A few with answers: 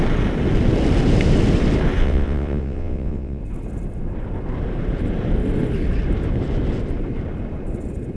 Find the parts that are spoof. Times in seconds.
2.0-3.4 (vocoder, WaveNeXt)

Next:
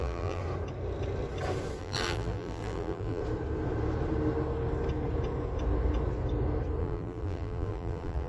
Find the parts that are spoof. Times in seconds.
0.0-0.4 (vocoder, BigVGAN v2); 1.8-3.2; 6.8-8.3

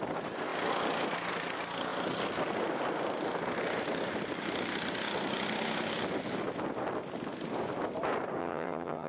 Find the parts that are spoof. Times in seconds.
8.4-9.1 (vocoder, HiFi-GAN)

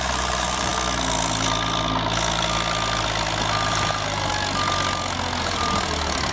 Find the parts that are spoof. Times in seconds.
0.0-0.7 (vocoder, BigVGAN v2); 3.7-4.3; 5.4-6.3

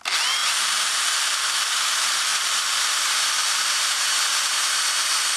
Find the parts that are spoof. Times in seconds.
0.4-1.6 (vocoder, BigVGAN v2); 2.3-2.8; 3.4-4.2

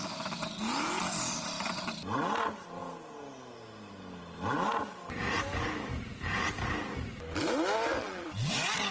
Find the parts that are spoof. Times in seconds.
8.0-8.5 (vocoder, Vocos)

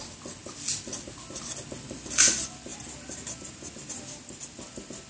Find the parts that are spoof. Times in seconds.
none